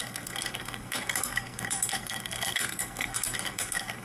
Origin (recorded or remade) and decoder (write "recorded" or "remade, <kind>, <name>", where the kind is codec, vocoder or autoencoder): remade, codec, SNAC